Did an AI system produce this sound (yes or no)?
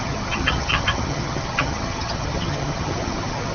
yes